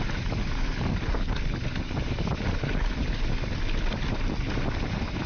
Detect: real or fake real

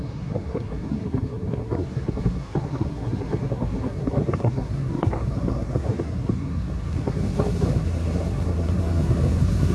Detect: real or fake fake